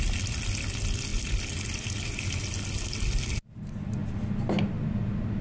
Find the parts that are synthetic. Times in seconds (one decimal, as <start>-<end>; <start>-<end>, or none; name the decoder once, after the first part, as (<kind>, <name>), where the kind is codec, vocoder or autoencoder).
none